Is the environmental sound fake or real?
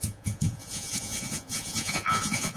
fake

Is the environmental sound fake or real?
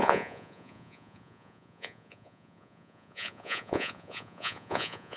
fake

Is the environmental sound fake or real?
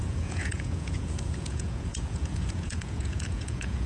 fake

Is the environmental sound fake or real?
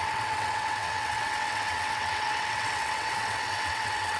fake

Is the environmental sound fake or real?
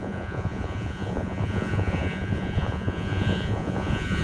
fake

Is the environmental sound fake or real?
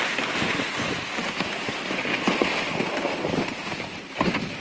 real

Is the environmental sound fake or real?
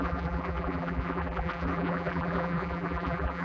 fake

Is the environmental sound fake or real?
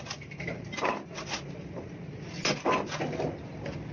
fake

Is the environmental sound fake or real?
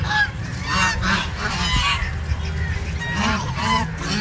real